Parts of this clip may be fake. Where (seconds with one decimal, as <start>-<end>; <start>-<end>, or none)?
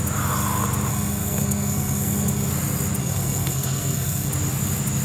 0.9-2.5; 3.0-4.3